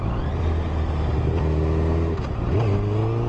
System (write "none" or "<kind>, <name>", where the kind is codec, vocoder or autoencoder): none